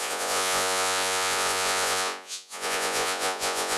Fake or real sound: fake